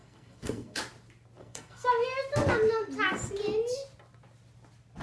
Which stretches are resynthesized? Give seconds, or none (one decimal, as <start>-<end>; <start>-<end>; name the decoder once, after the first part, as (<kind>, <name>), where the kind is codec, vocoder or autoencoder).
0.0-0.8 (codec, SNAC); 1.4-1.9

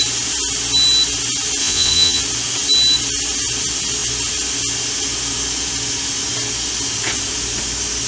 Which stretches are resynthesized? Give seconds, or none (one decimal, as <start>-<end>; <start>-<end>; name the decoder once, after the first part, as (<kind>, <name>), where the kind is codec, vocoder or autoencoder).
1.6-2.2 (vocoder, Vocos)

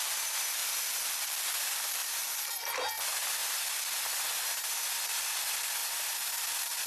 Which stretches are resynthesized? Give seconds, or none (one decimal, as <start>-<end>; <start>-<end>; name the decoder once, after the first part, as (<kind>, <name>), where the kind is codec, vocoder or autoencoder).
0.6-1.4 (vocoder, BigVGAN v2); 2.0-2.5

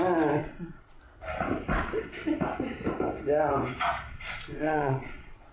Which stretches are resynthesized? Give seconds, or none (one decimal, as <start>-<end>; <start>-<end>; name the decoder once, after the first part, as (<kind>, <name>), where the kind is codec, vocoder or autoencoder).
0.4-1.0 (vocoder, Vocos); 4.1-5.5

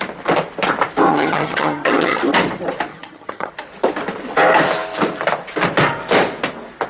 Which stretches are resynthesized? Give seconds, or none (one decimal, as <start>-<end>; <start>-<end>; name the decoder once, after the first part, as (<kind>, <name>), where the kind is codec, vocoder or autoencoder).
1.1-2.2 (vocoder, HiFi-GAN); 2.9-3.5

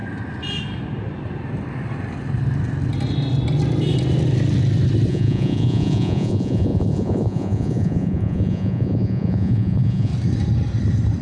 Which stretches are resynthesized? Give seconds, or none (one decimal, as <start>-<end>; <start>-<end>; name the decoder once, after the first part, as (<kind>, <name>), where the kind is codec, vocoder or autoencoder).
5.1-10.1 (vocoder, Vocos)